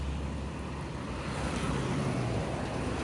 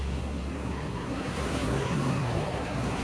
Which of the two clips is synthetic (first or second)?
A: second